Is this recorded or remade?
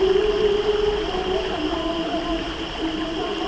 recorded